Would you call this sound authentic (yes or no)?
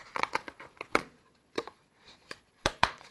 no